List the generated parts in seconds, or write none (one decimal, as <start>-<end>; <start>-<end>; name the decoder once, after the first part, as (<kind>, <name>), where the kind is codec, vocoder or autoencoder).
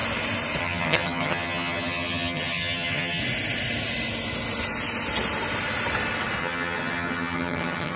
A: 0.6-3.2 (vocoder, HiFi-GAN); 6.4-8.0